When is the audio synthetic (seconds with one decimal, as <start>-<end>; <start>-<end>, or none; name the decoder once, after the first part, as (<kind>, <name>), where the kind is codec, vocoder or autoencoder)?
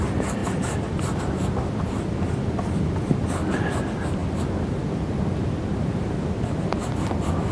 none